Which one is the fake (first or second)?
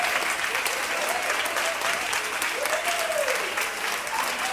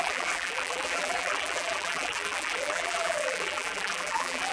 second